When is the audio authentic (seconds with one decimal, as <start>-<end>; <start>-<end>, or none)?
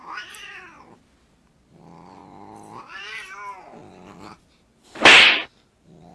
0.0-6.1